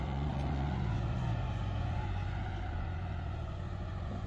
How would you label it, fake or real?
fake